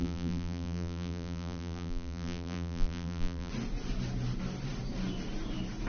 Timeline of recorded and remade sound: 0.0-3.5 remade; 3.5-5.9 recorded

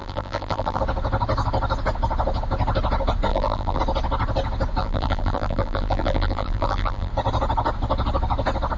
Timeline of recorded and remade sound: 0.0-0.8 remade; 0.8-3.3 recorded; 3.3-3.8 remade; 3.8-4.8 recorded; 4.8-7.1 remade; 7.1-8.8 recorded

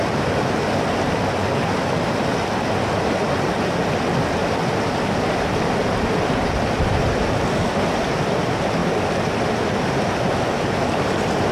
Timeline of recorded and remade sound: 0.0-4.4 recorded; 4.4-7.1 remade; 7.1-11.5 recorded

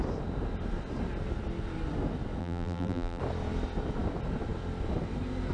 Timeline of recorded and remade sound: 0.0-2.4 recorded; 2.4-3.2 remade; 3.2-5.5 recorded

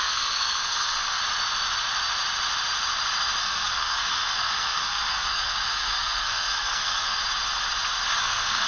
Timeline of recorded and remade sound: 0.0-1.2 remade; 1.2-3.4 recorded; 3.4-7.2 remade; 7.2-8.2 recorded; 8.2-8.7 remade

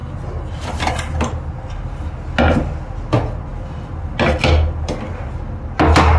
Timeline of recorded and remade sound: 0.0-6.2 recorded